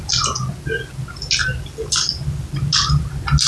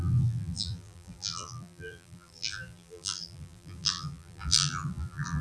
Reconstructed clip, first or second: second